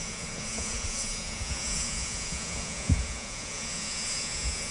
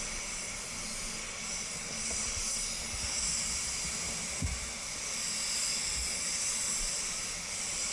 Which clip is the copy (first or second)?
first